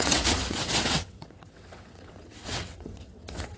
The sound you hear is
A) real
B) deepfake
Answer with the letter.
B